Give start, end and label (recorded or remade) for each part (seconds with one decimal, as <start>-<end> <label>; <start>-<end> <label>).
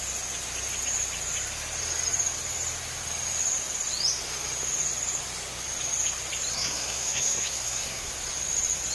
0.0-6.5 recorded; 6.5-8.1 remade; 8.1-8.9 recorded